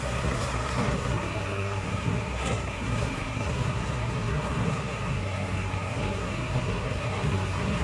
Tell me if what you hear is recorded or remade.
remade